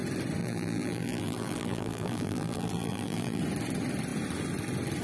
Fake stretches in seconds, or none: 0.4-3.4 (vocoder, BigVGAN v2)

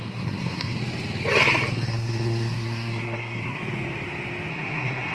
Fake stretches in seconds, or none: 0.0-0.8 (codec, SNAC); 1.7-3.6; 4.5-5.1

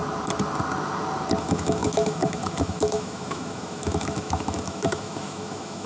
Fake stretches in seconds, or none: 1.4-5.9 (autoencoder, DAC-VAE)

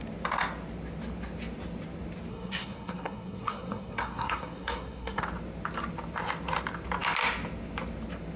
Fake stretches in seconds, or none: 2.3-5.2 (codec, SNAC)